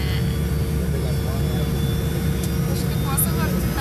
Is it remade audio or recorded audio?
recorded